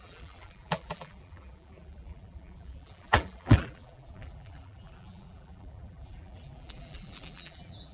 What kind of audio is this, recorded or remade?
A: remade